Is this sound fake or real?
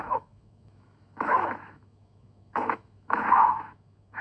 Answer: fake